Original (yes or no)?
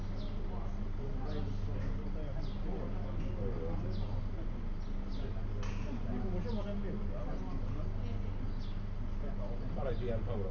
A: yes